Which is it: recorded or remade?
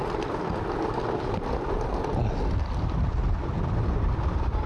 recorded